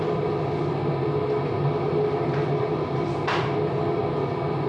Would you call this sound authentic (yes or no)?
yes